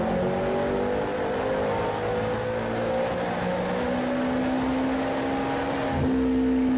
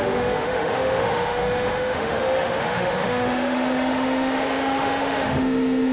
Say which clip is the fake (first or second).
second